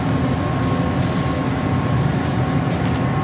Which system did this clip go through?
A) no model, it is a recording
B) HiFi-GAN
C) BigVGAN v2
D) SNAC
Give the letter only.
A